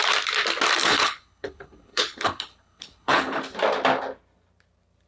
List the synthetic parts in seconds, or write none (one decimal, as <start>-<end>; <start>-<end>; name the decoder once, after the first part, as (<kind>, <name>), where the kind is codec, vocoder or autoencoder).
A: 0.8-3.4 (codec, HILCodec)